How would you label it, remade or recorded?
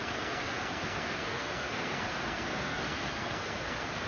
remade